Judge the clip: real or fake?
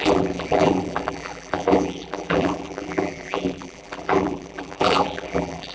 fake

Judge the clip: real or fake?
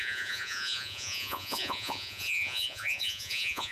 fake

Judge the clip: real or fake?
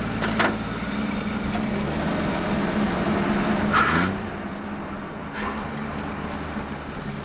real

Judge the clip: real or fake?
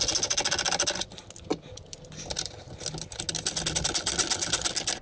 real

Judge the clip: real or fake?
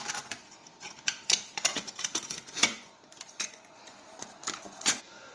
fake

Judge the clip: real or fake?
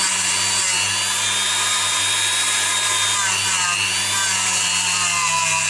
real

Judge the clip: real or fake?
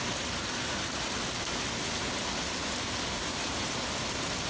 real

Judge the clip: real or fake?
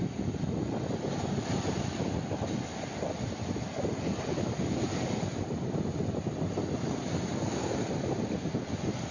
real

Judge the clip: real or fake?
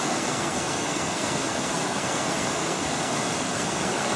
fake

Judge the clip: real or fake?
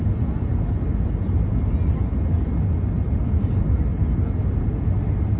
real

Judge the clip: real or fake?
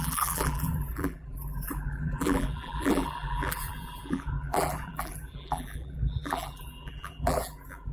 fake